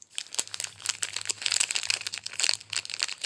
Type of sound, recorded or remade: recorded